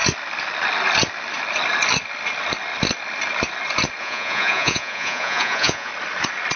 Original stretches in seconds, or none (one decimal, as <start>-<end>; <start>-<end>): 0.0-4.0; 5.9-6.6